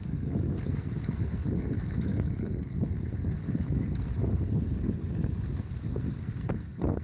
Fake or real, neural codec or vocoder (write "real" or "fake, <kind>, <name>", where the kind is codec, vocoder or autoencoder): fake, codec, SNAC